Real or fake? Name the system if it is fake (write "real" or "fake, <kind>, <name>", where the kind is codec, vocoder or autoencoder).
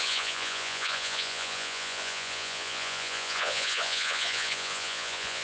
fake, vocoder, Vocos